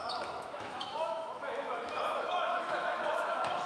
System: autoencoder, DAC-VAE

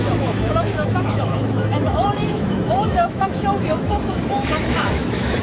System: autoencoder, DAC-VAE